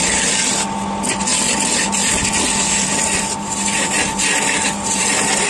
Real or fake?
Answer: real